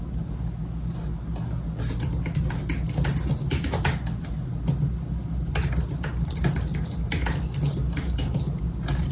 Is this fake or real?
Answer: real